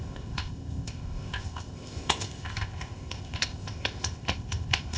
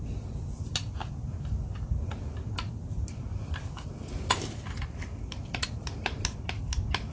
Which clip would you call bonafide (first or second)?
second